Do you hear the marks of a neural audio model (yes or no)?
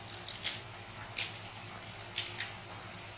no